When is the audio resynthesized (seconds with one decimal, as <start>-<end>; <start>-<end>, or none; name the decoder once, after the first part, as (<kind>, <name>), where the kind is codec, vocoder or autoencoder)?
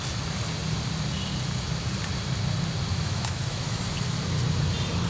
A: 2.9-3.8 (autoencoder, DAC-VAE)